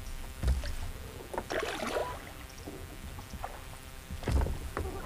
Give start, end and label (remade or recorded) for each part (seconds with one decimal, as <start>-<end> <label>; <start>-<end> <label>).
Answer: 0.0-5.1 recorded